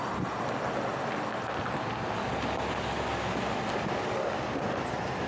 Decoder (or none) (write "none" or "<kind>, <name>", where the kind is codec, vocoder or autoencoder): none